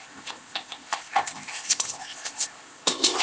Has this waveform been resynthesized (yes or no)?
yes